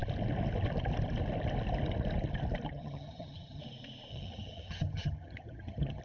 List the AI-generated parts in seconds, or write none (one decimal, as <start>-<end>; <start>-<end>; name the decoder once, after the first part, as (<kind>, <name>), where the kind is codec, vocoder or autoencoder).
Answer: 2.7-3.6 (vocoder, HiFi-GAN); 4.1-6.0